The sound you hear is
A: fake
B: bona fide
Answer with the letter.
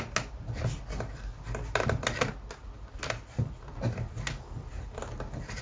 B